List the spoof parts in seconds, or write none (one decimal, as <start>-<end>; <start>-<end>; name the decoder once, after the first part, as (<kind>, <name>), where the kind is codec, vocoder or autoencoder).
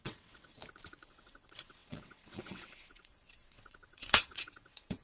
0.0-0.6 (vocoder, WaveNeXt); 1.1-5.0